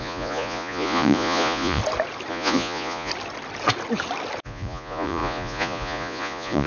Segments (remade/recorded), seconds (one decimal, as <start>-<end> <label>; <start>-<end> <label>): 0.0-1.8 remade; 1.8-2.3 recorded; 2.3-3.1 remade; 3.1-4.4 recorded; 4.4-6.7 remade